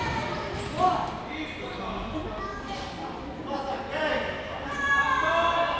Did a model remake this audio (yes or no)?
no